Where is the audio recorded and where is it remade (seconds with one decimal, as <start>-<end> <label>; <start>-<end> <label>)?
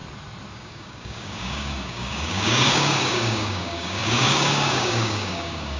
0.0-0.5 recorded; 0.5-5.8 remade